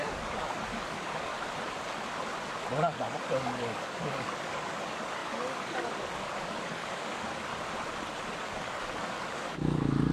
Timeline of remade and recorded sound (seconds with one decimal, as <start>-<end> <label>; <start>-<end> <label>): 0.0-1.3 remade; 1.3-2.7 recorded; 2.7-7.5 remade; 7.5-8.4 recorded; 8.4-10.1 remade